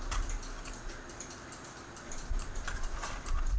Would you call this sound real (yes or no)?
no